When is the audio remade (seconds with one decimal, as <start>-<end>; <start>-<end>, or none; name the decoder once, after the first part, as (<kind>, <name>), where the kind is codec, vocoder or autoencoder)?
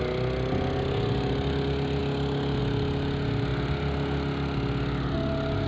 none